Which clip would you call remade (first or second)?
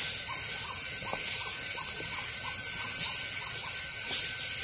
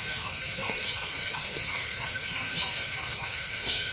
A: second